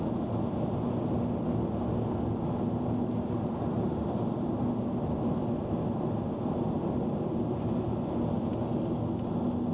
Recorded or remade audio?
recorded